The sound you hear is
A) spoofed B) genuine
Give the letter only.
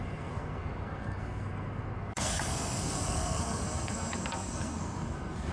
A